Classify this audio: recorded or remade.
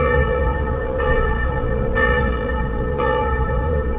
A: remade